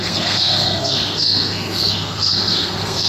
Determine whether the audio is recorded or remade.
remade